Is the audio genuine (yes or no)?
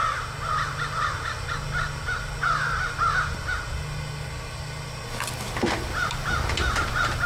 yes